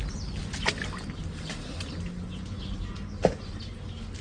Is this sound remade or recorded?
recorded